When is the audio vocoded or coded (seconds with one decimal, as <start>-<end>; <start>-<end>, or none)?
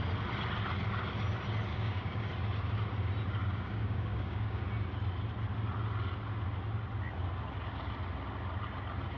1.7-2.3; 3.4-4.6